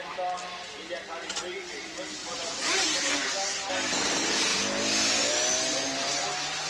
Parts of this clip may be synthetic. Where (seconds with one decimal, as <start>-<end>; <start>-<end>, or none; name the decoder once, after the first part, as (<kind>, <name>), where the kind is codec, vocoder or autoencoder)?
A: 2.2-3.7 (vocoder, BigVGAN v2)